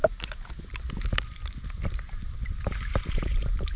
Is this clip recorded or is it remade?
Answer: remade